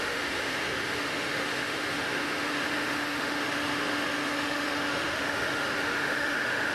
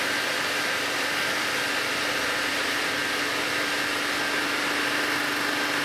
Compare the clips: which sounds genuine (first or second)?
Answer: second